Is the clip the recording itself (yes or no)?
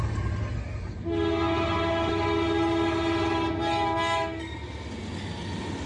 yes